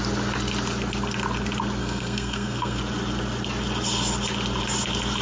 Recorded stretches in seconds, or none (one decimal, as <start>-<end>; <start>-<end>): 0.0-1.8; 2.8-5.2